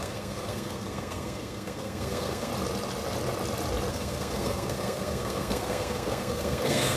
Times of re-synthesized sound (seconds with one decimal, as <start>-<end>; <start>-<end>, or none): 0.0-2.5; 3.9-7.0